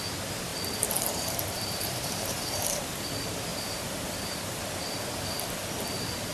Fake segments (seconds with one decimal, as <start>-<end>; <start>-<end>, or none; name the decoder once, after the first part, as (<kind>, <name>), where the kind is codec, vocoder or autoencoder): 0.5-3.1 (vocoder, BigVGAN v2); 3.5-4.6